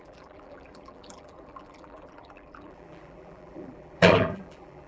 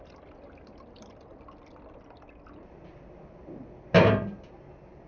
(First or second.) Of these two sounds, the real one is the second